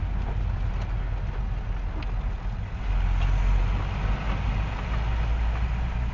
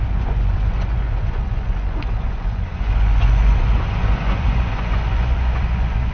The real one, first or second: first